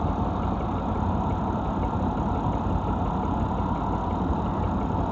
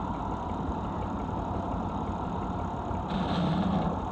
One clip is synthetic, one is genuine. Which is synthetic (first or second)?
second